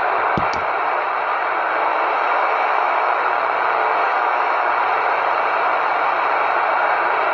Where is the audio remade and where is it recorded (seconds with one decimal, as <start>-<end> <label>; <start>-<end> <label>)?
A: 0.0-1.9 recorded; 1.9-3.2 remade; 3.2-4.0 recorded; 4.0-4.7 remade; 4.7-7.3 recorded